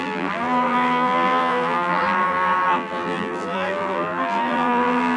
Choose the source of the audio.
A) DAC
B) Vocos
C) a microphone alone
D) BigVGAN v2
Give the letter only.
D